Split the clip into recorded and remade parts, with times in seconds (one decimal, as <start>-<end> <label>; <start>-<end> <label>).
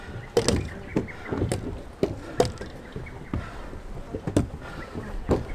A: 0.0-5.5 recorded